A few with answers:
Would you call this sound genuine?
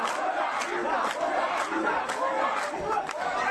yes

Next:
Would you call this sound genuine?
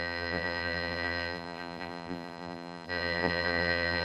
no